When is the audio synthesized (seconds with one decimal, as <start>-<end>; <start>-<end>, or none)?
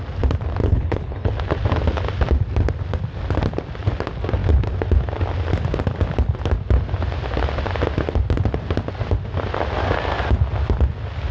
0.6-1.3